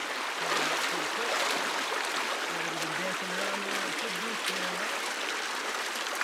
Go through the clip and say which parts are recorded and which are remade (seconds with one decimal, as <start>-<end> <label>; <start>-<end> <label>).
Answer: 0.0-6.2 recorded